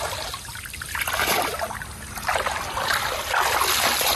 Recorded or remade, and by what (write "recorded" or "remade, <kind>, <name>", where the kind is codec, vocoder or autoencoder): recorded